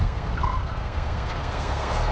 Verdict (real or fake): fake